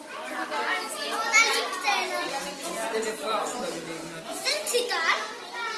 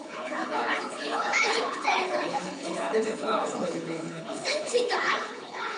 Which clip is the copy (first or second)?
second